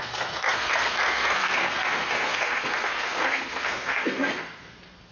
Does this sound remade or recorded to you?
remade